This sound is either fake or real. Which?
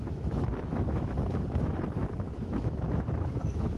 fake